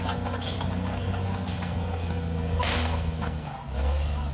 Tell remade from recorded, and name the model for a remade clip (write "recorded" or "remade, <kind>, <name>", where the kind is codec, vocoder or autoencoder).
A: remade, codec, SNAC